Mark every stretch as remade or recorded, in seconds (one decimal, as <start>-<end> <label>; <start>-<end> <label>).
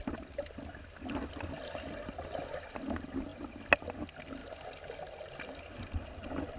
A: 0.0-6.6 recorded